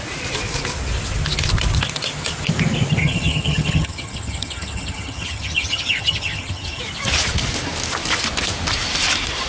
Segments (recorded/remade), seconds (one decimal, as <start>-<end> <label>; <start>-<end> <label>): 0.0-3.0 recorded; 3.0-6.8 remade; 6.8-9.5 recorded